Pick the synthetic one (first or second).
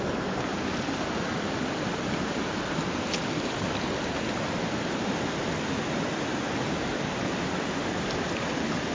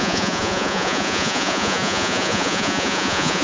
second